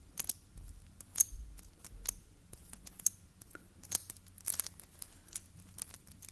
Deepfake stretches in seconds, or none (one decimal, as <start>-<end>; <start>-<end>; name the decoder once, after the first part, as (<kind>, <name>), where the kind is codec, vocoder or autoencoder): 1.1-1.6 (vocoder, Vocos); 2.2-3.6